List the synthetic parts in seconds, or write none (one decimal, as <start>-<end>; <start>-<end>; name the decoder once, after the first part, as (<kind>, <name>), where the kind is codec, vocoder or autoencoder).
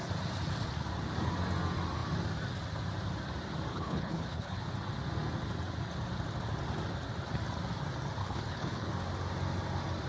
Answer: 3.7-4.6 (codec, HILCodec); 8.2-8.9